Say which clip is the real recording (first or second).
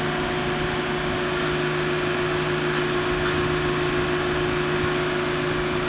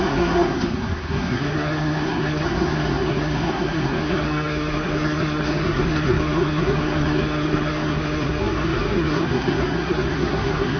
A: first